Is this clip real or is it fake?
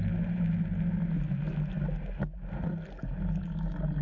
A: real